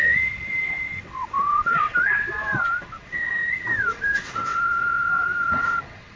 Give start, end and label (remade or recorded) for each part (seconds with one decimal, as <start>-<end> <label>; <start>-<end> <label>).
0.0-6.2 remade